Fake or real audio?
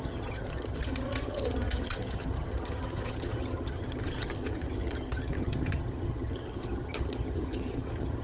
fake